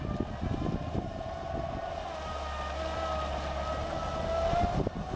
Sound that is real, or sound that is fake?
real